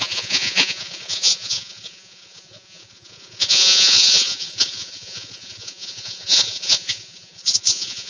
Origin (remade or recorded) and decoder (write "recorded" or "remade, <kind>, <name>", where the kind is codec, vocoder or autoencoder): remade, vocoder, Vocos